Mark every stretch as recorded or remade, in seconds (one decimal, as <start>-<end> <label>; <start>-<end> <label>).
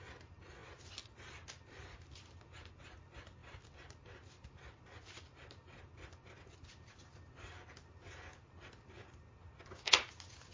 0.0-10.5 recorded